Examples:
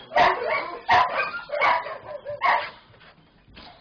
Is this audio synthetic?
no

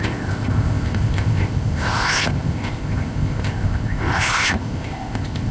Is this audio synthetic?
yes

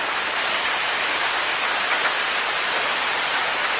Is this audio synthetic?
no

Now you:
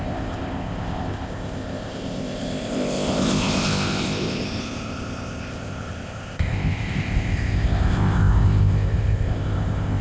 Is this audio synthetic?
yes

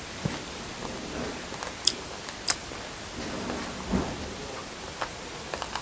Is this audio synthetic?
no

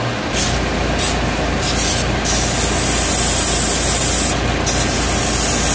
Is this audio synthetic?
no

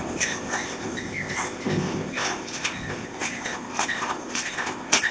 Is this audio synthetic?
yes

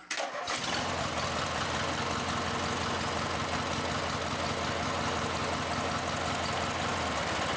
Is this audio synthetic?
no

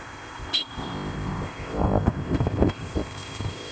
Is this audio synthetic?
yes